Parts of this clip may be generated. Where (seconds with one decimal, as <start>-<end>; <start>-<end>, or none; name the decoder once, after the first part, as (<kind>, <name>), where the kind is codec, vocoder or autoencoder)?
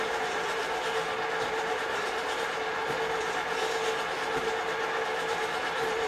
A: 0.0-0.6 (vocoder, BigVGAN v2); 1.5-2.8; 5.3-6.1